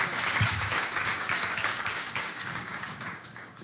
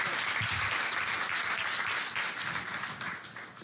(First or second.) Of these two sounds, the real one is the second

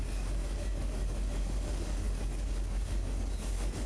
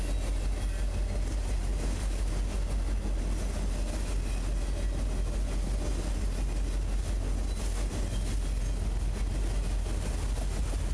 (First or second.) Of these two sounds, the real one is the second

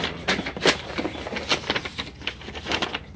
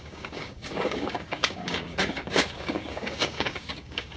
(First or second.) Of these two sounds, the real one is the first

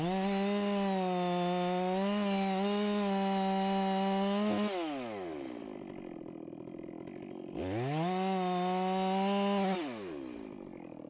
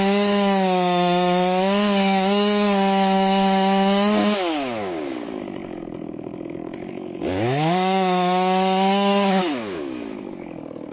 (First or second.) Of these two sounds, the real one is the first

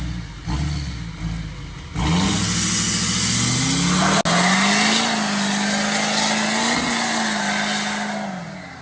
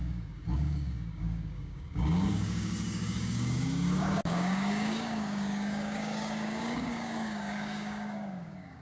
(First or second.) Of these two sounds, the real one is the first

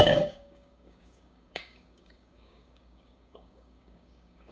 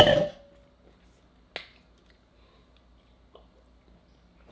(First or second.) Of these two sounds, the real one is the second